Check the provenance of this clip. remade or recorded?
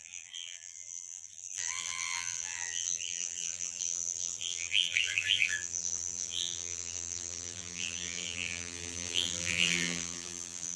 remade